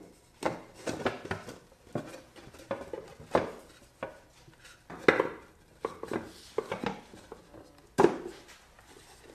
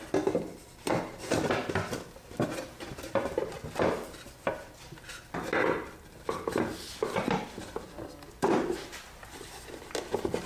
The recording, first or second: first